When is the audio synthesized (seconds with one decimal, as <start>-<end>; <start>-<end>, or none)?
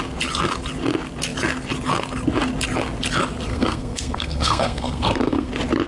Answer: 3.5-5.5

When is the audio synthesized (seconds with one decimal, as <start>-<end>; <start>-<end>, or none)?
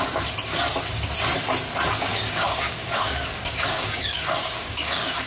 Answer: 2.1-5.3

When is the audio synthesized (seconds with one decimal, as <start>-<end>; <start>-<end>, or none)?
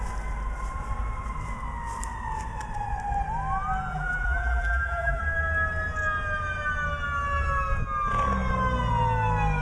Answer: 3.9-5.2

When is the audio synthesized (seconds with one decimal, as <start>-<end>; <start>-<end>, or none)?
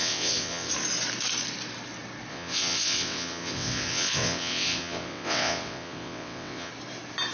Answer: 0.0-0.7; 2.3-6.7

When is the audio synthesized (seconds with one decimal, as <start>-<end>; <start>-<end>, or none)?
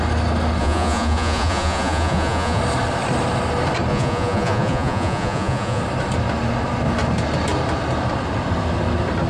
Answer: 0.6-2.6; 3.9-5.8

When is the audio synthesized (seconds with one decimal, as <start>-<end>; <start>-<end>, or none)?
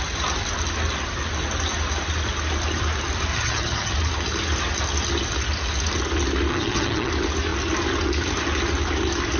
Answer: 3.3-3.9; 6.5-7.1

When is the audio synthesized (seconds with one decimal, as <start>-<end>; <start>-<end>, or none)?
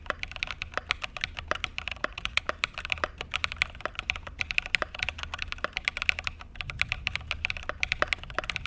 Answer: 1.9-2.4